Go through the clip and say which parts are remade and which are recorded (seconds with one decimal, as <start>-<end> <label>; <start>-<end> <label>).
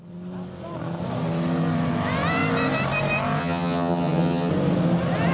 0.0-3.4 recorded; 3.4-4.5 remade; 4.5-5.3 recorded